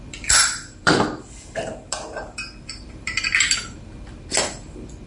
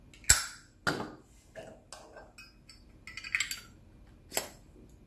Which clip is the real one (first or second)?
second